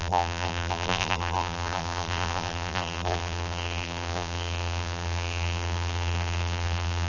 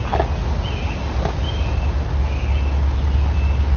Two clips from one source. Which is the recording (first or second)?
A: second